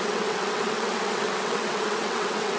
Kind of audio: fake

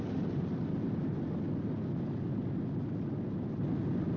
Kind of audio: real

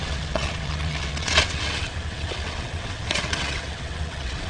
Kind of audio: fake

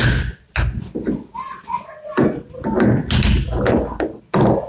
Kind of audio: real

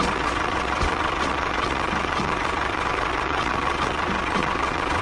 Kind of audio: fake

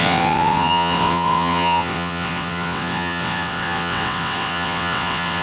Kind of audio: fake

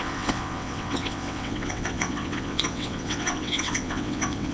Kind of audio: fake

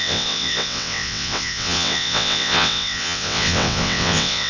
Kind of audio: fake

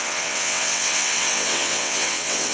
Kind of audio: fake